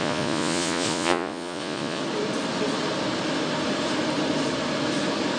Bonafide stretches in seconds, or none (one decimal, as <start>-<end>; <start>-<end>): 2.0-5.4